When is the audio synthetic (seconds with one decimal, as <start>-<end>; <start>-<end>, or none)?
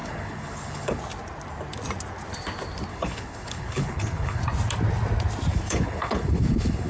0.0-1.0; 2.9-4.4; 5.5-6.9